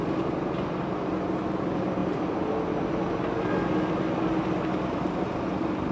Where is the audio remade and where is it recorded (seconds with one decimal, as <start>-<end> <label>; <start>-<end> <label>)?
0.0-5.9 recorded